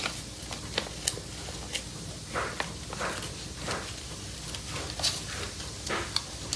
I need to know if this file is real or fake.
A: real